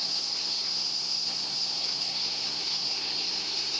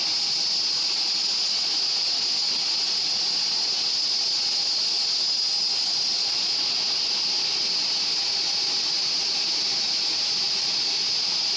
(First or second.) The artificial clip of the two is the first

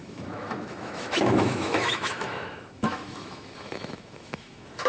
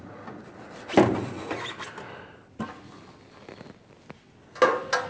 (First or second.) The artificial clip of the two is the first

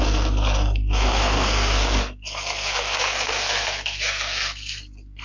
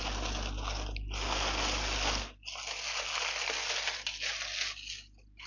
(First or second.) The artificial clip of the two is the first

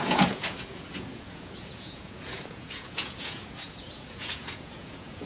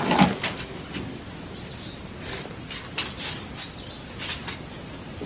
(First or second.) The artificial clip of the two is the first